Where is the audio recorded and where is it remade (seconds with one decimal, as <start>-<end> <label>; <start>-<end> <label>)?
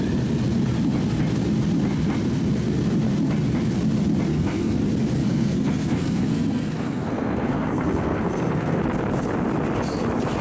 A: 0.0-4.3 recorded; 4.3-4.8 remade; 4.8-5.2 recorded; 5.2-8.8 remade; 8.8-10.4 recorded